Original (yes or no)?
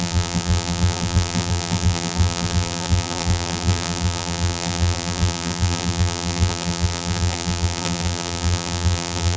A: no